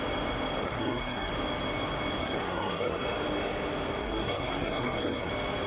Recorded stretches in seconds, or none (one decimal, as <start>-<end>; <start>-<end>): 0.0-0.6; 1.3-2.2; 3.0-4.0; 5.3-5.7